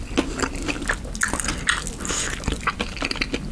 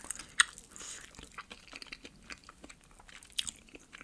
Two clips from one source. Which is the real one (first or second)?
first